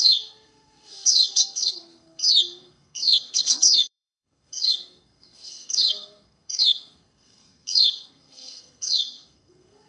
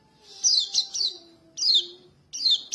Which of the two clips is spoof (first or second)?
first